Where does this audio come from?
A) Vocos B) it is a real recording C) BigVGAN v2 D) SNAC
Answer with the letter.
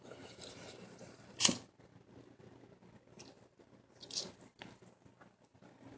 B